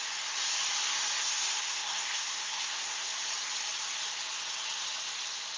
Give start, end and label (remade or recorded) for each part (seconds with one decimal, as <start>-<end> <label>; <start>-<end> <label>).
0.0-1.2 recorded; 1.2-3.2 remade; 3.2-5.6 recorded